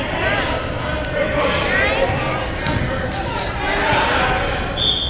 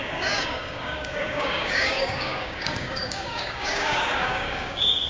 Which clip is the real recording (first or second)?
first